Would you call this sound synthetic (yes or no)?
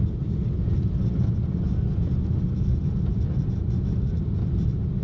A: no